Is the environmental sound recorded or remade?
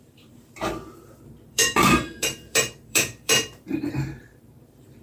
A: remade